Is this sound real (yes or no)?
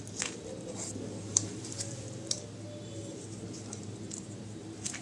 yes